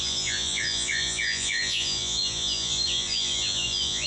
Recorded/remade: remade